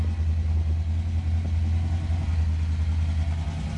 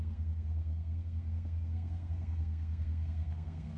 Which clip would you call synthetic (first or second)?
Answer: second